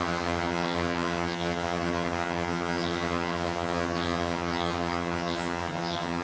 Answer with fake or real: fake